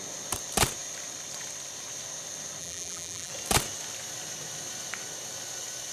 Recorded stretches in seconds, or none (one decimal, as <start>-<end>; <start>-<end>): 0.0-2.6; 3.3-5.9